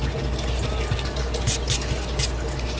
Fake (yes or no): no